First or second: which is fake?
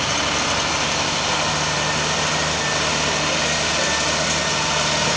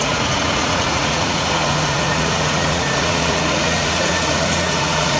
second